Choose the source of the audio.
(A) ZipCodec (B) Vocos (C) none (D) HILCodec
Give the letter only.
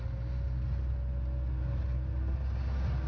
C